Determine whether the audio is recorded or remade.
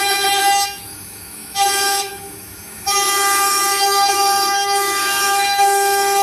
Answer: remade